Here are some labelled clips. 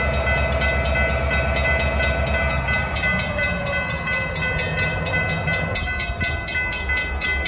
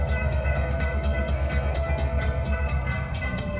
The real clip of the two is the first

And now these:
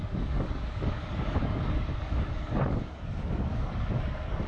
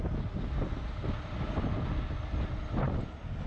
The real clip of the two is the second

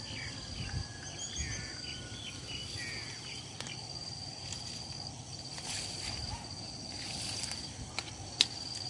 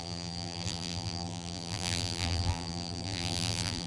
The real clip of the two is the first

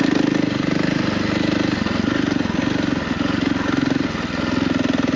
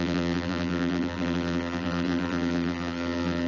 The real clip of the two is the first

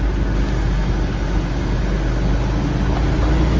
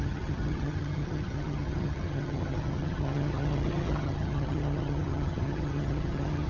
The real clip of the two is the first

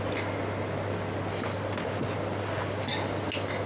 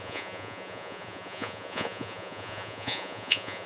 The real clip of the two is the first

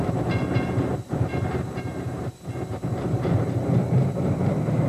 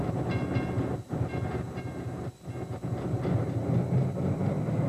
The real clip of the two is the second